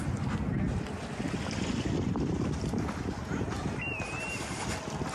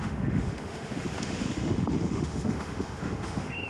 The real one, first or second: first